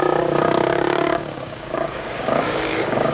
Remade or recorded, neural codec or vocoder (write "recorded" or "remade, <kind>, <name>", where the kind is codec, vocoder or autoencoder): remade, codec, DAC